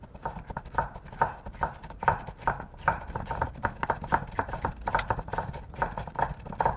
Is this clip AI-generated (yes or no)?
no